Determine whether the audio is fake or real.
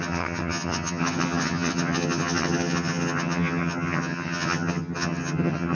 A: fake